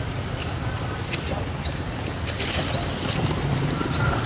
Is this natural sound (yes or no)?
no